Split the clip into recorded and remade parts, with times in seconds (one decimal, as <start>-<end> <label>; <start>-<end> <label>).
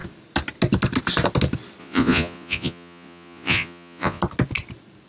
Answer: 0.0-1.8 recorded; 1.8-4.2 remade; 4.2-5.1 recorded